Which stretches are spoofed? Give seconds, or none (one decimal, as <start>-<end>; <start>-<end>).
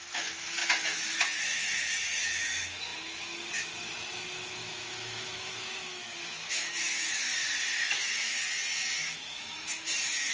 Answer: 0.0-7.3; 7.8-8.4; 9.0-10.3